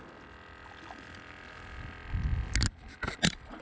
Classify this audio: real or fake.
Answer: real